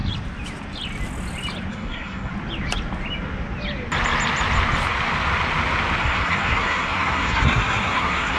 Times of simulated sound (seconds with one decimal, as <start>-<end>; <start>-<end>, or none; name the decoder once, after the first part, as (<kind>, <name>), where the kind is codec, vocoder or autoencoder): 1.7-2.3 (codec, SNAC); 6.0-8.4